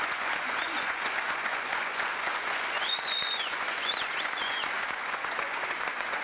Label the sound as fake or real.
fake